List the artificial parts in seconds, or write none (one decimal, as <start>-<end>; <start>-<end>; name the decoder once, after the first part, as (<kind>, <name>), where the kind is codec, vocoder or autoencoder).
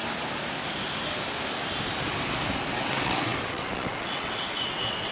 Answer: 2.7-5.1 (vocoder, WaveNeXt)